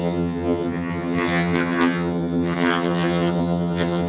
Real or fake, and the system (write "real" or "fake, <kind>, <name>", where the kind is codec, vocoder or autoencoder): fake, vocoder, HiFi-GAN